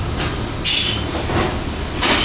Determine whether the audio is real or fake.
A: real